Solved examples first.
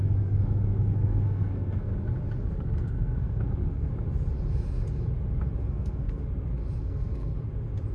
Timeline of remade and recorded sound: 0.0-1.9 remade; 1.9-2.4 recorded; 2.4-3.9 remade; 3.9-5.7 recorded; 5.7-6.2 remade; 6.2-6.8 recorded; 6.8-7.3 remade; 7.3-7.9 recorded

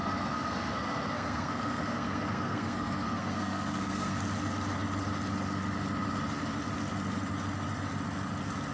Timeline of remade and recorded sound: 0.0-4.2 remade; 4.2-8.7 recorded

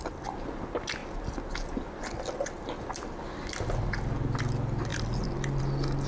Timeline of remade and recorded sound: 0.0-6.1 recorded

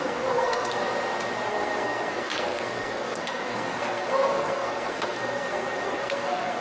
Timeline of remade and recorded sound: 0.0-0.8 remade; 0.8-1.5 recorded; 1.5-6.6 remade

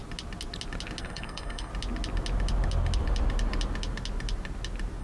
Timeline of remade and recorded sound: 0.0-1.0 recorded; 1.0-1.7 remade; 1.7-5.0 recorded

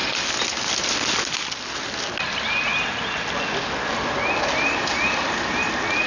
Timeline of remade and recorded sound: 0.0-6.1 recorded

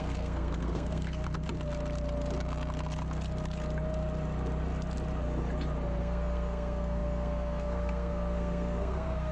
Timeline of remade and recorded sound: 0.0-1.2 remade; 1.2-6.0 recorded; 6.0-9.3 remade